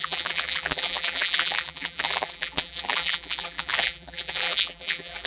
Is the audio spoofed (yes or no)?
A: yes